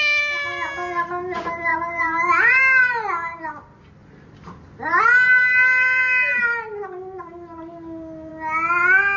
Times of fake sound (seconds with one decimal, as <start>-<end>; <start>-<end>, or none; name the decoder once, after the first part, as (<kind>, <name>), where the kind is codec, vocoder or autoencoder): 1.7-3.4 (vocoder, BigVGAN v2); 4.0-5.0